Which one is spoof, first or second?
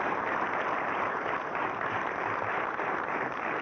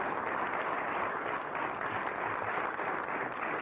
first